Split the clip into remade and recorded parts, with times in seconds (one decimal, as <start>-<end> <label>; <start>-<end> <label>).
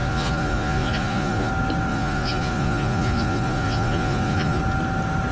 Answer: 0.0-1.5 remade; 1.5-1.9 recorded; 1.9-4.6 remade; 4.6-5.3 recorded